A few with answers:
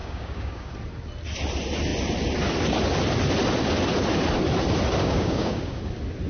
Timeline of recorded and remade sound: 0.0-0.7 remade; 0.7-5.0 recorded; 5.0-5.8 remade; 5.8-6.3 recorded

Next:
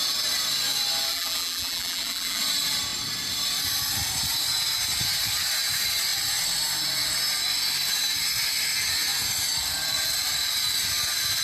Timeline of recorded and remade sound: 0.0-1.1 recorded; 1.1-2.4 remade; 2.4-11.4 recorded